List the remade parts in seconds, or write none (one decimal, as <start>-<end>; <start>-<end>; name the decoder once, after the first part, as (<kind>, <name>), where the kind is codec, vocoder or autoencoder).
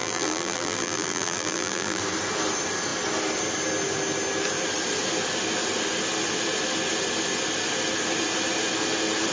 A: 0.0-2.0 (vocoder, BigVGAN v2)